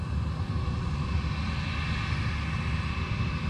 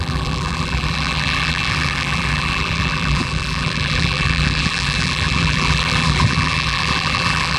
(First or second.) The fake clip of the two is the second